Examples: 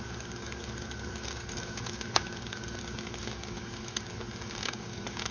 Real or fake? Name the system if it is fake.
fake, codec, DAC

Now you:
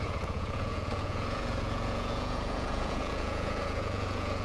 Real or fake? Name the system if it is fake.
fake, vocoder, Vocos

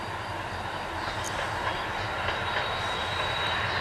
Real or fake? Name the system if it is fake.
real